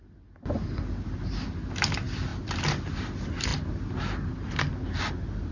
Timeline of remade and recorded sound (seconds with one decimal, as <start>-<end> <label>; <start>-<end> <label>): 0.0-5.5 recorded